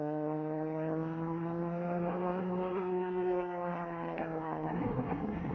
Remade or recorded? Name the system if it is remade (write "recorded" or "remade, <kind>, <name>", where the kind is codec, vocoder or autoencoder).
remade, codec, SNAC